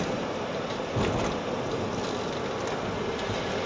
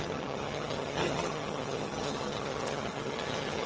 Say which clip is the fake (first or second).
second